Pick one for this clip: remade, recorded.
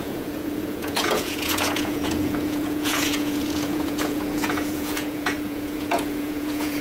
remade